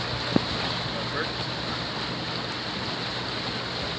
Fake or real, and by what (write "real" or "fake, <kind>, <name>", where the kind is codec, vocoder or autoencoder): real